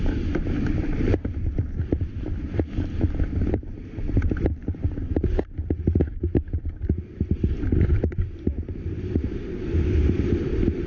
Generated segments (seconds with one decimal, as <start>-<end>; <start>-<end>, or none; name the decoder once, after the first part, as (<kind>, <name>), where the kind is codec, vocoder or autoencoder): 0.0-10.9 (vocoder, BigVGAN v2)